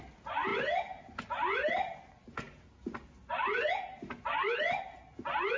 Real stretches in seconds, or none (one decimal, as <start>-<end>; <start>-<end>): 0.0-5.6

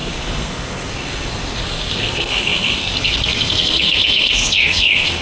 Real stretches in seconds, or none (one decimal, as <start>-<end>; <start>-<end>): none

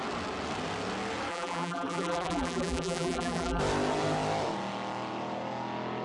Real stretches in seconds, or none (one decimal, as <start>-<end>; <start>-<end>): 0.0-1.3; 3.6-6.0

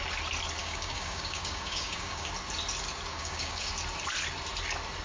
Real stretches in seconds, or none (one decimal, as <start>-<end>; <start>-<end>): 0.0-0.6; 2.3-3.1; 3.7-5.0